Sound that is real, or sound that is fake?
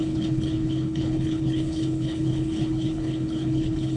fake